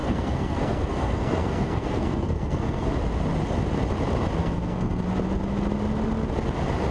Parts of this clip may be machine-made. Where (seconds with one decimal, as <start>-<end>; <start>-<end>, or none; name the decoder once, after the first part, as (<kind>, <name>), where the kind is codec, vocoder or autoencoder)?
0.0-2.9 (codec, SNAC); 4.4-5.0